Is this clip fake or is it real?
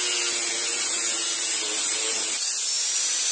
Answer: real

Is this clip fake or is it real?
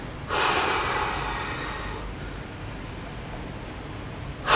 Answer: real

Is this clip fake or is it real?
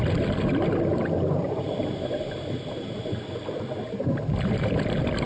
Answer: real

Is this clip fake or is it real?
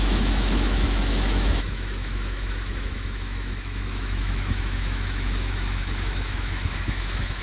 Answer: fake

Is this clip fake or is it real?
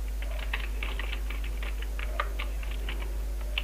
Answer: real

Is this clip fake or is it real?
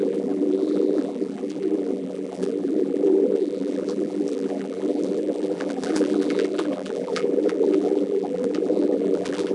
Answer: fake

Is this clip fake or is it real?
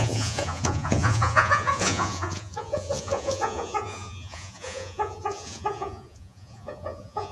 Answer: fake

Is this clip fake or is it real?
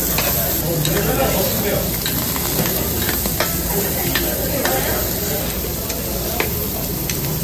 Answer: real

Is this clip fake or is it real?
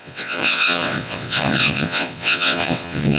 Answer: fake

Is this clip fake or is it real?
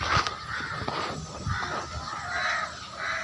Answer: real